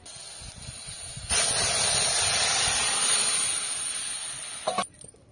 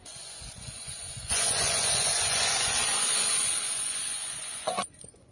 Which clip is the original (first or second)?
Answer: first